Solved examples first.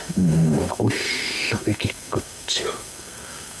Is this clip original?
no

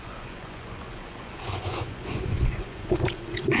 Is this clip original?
no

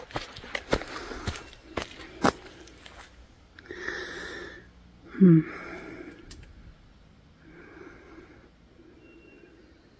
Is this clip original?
yes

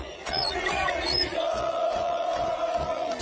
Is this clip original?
no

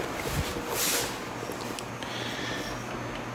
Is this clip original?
yes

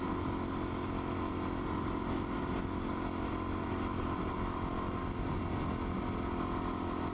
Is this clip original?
yes